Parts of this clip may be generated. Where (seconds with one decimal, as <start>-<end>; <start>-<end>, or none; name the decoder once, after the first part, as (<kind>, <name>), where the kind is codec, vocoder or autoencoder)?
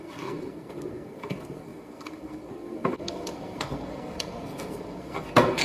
0.0-5.6 (codec, SNAC)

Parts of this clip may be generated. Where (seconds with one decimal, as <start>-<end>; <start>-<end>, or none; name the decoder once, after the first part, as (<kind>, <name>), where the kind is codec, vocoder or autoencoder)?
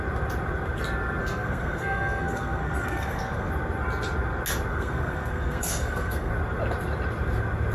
1.2-3.5 (codec, SNAC); 4.7-6.3